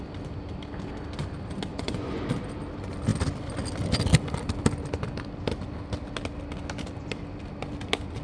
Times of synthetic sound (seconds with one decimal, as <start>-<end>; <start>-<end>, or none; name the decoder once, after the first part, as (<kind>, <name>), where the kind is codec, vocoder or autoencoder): 1.7-2.3 (vocoder, Vocos)